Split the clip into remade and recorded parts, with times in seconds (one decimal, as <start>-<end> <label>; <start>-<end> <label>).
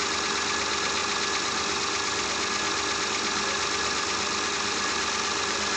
0.0-5.8 recorded